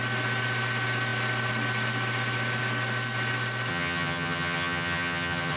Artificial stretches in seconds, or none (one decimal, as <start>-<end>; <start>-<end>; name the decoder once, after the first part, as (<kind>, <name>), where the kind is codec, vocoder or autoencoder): 3.7-5.6 (vocoder, HiFi-GAN)